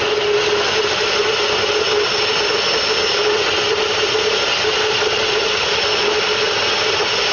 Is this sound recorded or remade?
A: recorded